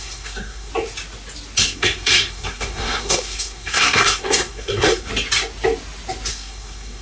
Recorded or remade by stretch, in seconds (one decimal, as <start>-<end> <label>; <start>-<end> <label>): 0.0-0.7 remade; 0.7-1.6 recorded; 1.6-5.1 remade; 5.1-6.3 recorded; 6.3-7.0 remade